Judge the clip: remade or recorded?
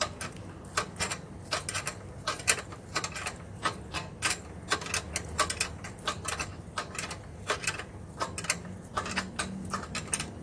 recorded